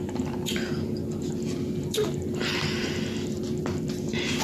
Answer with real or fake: real